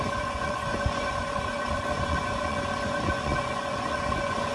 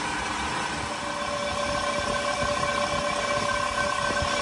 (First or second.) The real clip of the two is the second